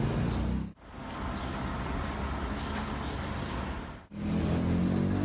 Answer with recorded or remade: recorded